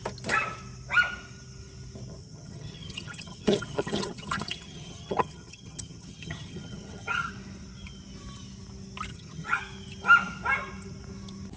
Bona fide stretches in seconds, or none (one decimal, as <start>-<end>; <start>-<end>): 0.0-2.2; 7.3-9.1; 9.6-11.6